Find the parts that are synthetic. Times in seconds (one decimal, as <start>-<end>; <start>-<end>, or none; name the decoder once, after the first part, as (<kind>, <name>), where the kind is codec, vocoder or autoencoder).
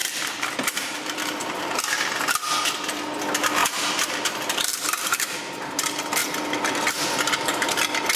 0.0-1.8 (vocoder, BigVGAN v2); 3.6-5.4; 6.2-6.9